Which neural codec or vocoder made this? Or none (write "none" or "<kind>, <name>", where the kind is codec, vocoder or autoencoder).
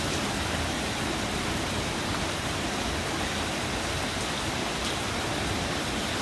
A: none